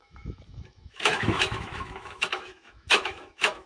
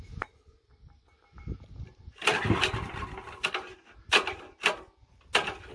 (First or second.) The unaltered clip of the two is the second